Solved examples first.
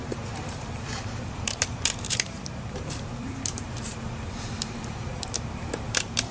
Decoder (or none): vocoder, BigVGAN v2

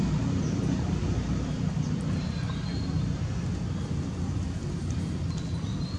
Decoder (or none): none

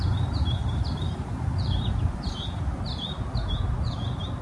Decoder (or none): none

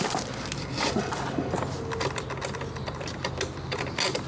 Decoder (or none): none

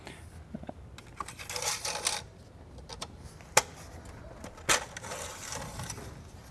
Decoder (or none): none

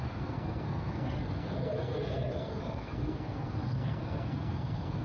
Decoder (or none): codec, SNAC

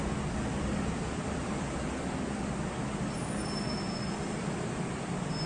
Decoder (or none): none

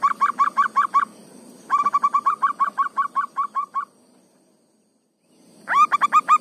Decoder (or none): none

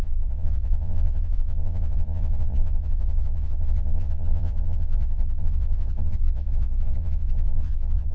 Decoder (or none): vocoder, Vocos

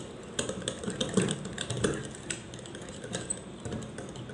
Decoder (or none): none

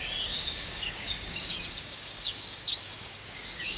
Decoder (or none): codec, DAC